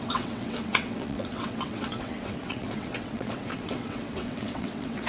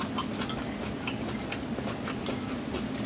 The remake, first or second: first